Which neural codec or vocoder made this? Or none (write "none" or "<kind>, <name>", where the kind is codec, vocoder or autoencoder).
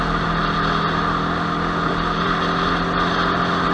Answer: none